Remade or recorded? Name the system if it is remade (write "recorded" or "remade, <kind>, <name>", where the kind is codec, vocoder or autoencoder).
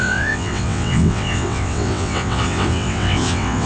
remade, vocoder, WaveNeXt